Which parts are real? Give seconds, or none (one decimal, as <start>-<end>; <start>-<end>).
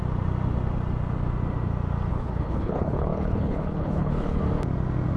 0.0-2.1; 4.4-5.2